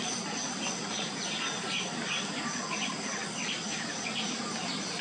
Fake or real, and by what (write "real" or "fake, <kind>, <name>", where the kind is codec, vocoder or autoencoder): real